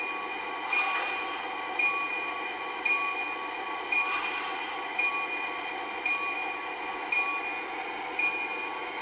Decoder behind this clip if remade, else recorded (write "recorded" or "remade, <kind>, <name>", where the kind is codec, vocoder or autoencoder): recorded